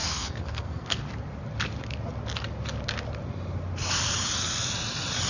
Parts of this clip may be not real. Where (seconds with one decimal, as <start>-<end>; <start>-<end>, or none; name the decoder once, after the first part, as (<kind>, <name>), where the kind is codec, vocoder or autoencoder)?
0.0-1.0 (codec, SNAC)